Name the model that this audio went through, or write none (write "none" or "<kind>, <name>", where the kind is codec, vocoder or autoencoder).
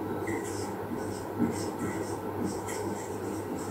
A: none